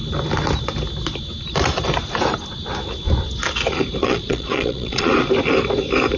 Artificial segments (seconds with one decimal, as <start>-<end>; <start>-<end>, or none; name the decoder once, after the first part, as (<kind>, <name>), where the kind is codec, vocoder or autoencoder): 4.0-5.1 (vocoder, Vocos)